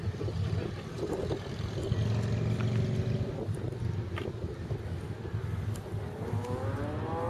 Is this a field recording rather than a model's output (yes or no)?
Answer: yes